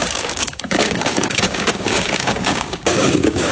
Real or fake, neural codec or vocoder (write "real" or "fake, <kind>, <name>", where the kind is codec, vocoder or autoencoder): fake, codec, DAC